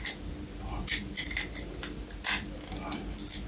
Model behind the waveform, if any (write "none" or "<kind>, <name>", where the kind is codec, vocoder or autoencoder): none